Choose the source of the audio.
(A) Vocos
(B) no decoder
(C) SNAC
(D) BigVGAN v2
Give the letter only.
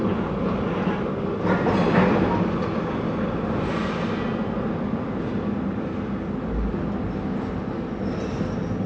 B